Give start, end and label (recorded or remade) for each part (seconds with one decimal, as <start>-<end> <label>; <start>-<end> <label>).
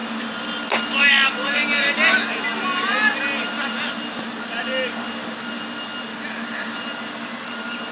0.0-7.9 recorded